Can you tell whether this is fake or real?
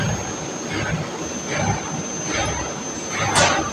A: real